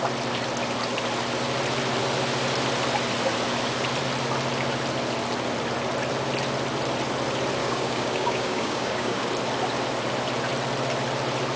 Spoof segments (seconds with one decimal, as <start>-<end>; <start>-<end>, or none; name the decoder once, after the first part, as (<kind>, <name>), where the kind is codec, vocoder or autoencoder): 7.6-9.3 (codec, DAC)